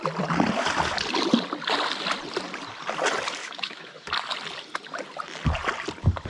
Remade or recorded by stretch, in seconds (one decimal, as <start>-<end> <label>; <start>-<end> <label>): 0.0-3.4 recorded; 3.4-4.1 remade; 4.1-6.3 recorded